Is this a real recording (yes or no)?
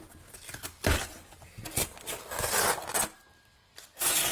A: yes